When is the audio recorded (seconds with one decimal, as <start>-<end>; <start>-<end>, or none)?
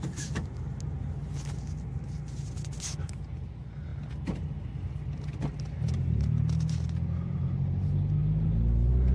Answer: 0.0-9.1